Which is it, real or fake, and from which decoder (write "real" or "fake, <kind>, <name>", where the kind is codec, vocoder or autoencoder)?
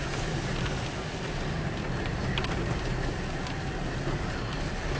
real